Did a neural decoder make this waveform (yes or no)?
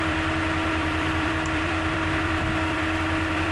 yes